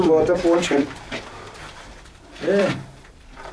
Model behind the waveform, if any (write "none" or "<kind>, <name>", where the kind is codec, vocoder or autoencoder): vocoder, BigVGAN v2